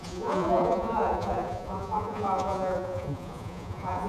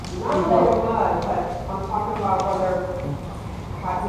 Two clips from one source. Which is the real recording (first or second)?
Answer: second